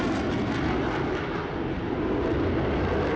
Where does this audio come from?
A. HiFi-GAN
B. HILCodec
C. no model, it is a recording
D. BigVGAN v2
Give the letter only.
C